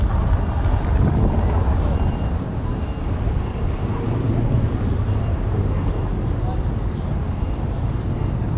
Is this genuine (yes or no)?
yes